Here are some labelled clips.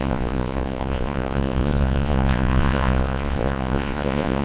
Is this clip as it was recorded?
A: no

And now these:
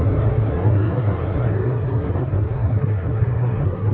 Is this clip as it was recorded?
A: no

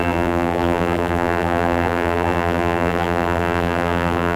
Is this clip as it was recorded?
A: no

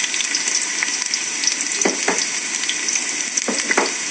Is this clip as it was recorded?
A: yes